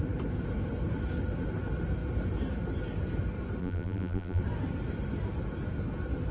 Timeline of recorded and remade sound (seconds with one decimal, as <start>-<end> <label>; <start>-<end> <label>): 0.0-3.6 recorded; 3.6-4.4 remade; 4.4-6.3 recorded